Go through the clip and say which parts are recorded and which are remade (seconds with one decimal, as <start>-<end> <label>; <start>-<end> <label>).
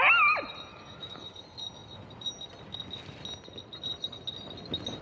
0.0-0.7 recorded; 0.7-1.4 remade; 1.4-5.0 recorded